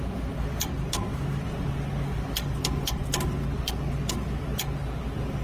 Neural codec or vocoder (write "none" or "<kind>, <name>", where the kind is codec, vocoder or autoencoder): none